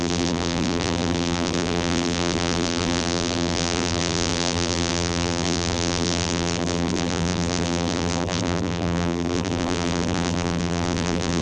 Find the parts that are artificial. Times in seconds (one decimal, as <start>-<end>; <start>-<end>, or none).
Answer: 0.0-11.4